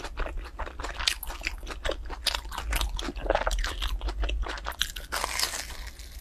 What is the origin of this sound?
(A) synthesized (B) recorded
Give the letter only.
B